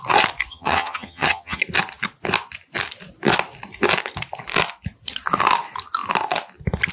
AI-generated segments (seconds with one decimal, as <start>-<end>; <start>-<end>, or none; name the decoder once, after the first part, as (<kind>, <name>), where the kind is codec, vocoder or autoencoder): 0.5-1.6 (vocoder, HiFi-GAN)